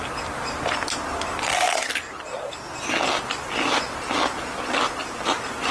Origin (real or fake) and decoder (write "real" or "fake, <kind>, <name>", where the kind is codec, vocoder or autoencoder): real